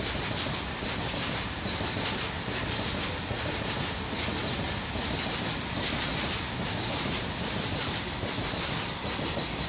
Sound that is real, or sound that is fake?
real